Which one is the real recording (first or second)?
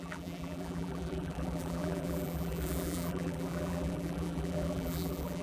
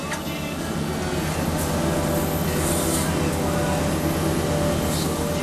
second